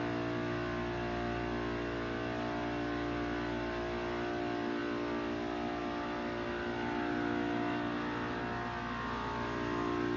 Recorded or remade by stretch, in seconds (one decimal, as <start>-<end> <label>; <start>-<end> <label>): 0.0-10.2 recorded